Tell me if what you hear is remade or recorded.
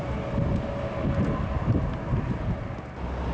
recorded